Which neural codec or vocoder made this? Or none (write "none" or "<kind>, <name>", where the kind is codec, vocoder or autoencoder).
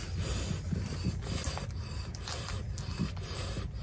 none